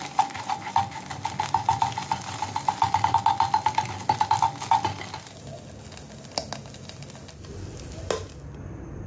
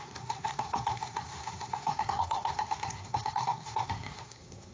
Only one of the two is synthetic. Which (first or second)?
second